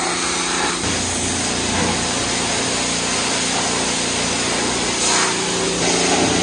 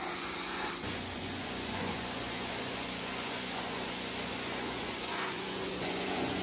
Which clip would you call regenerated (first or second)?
second